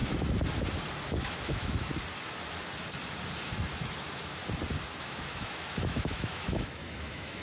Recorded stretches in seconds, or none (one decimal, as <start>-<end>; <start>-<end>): 0.0-1.0; 1.9-4.0; 4.4-5.0